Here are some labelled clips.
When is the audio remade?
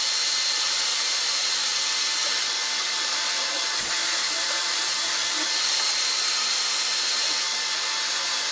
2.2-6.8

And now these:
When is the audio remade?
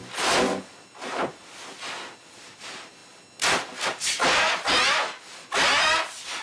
2.5-3.0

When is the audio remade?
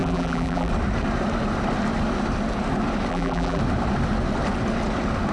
0.0-0.7; 3.1-3.6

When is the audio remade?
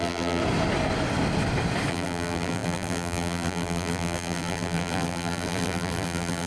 0.0-0.4; 1.9-6.5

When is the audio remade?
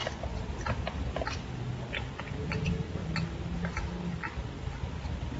none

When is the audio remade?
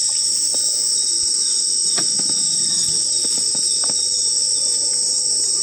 none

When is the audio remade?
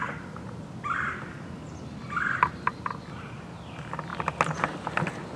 none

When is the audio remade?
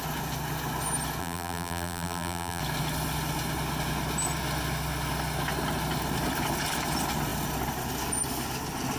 1.2-2.6